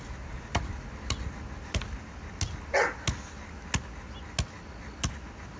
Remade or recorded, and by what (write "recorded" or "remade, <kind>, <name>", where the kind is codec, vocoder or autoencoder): recorded